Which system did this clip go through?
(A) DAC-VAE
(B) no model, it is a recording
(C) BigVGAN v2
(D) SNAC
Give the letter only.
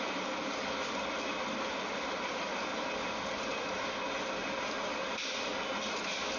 B